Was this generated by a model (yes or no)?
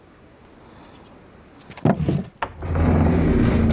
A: no